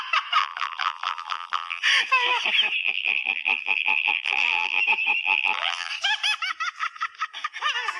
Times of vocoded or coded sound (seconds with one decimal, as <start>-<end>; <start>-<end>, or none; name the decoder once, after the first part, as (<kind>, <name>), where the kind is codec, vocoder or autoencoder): 0.4-1.8 (vocoder, BigVGAN v2); 2.8-4.8; 5.2-5.9